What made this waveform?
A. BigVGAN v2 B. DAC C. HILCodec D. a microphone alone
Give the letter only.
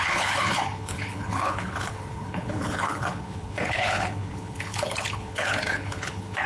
C